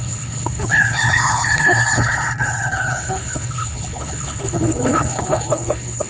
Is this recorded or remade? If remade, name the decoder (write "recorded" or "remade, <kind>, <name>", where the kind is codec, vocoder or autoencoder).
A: remade, codec, HILCodec